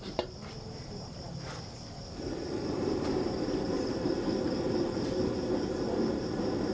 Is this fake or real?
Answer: fake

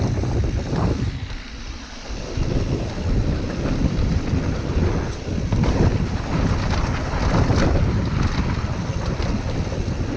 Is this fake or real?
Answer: real